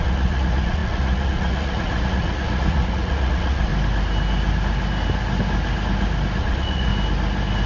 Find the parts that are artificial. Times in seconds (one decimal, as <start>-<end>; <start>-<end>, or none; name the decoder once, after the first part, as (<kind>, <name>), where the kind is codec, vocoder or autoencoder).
0.0-3.7 (vocoder, Vocos); 6.4-6.9